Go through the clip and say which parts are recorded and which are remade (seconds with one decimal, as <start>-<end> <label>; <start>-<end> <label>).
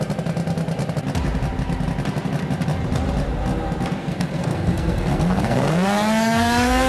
0.0-4.0 recorded; 4.0-6.9 remade